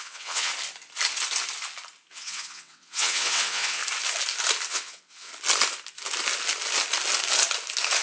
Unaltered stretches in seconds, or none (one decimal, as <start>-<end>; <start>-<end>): 0.5-2.1; 3.8-4.7; 5.3-8.0